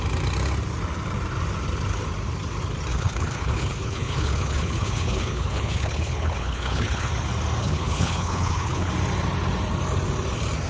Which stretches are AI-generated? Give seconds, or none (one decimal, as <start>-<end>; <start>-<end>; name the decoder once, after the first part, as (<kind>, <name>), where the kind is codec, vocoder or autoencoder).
2.9-7.1 (codec, HILCodec); 7.6-8.9